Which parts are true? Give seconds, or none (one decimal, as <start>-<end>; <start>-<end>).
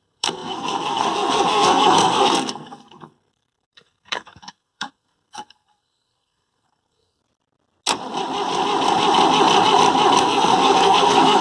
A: 7.2-10.2